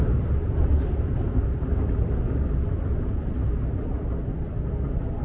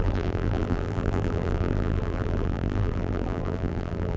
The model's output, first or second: second